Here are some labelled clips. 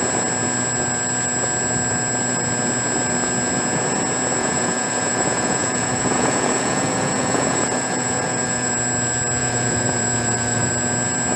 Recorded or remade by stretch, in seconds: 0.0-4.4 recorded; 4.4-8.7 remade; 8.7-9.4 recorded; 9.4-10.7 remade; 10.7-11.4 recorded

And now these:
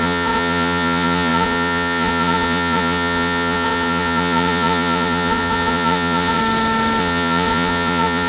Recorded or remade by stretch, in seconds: 0.0-6.4 remade; 6.4-7.0 recorded; 7.0-8.3 remade

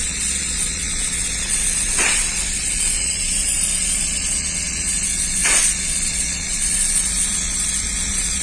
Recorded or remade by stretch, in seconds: 0.0-8.4 remade

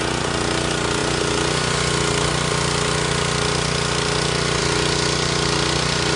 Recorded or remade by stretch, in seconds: 0.0-6.2 recorded